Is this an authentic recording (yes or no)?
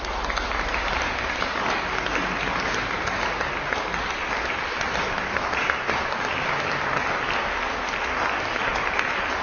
yes